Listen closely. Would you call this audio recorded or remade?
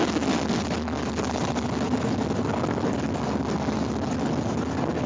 recorded